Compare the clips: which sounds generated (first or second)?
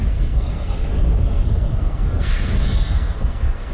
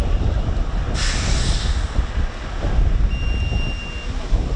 first